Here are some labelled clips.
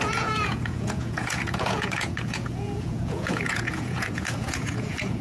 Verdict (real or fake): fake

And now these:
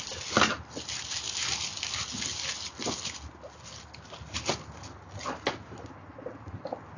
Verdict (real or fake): real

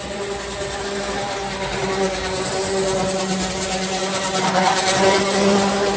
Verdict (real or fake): real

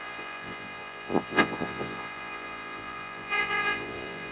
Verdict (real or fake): fake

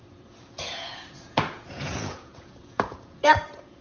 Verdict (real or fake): fake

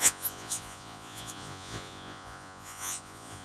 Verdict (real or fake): fake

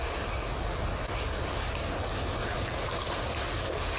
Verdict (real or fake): real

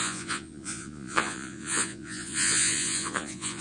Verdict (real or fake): fake